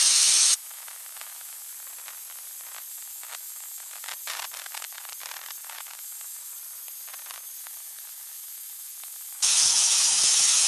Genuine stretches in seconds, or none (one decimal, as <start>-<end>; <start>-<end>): 1.7-2.9; 4.1-4.6; 5.1-5.6; 6.5-7.6